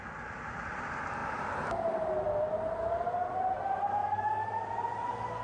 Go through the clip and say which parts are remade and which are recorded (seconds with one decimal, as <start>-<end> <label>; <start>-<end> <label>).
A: 0.0-4.0 recorded; 4.0-4.7 remade; 4.7-5.4 recorded